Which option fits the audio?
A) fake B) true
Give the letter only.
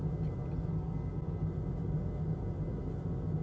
B